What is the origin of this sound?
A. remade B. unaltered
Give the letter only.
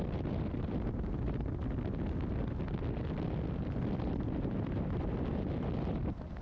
B